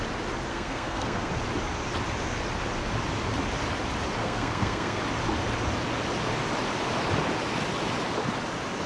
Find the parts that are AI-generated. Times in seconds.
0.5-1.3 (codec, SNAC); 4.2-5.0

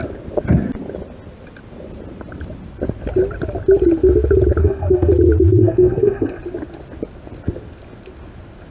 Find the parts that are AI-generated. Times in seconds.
4.6-5.1 (codec, SNAC); 5.6-6.4

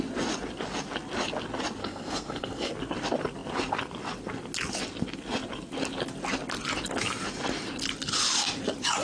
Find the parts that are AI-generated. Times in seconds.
1.8-2.7 (codec, SNAC)

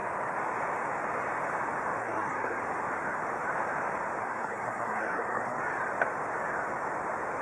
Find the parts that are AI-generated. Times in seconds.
2.0-2.6 (codec, SNAC); 4.2-5.6